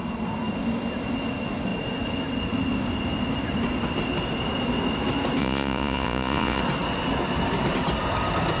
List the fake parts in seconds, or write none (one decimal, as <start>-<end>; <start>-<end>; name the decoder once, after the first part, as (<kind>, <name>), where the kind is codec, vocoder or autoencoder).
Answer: 5.4-6.6 (vocoder, Vocos)